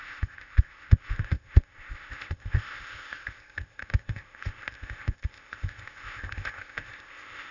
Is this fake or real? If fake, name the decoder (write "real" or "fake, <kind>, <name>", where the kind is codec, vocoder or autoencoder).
fake, codec, ZipCodec